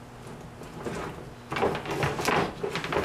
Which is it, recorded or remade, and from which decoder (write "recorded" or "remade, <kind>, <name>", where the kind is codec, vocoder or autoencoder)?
recorded